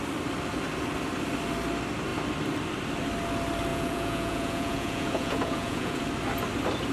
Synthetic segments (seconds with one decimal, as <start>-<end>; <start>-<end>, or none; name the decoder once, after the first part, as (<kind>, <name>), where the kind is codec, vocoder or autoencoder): 3.7-6.0 (vocoder, Vocos)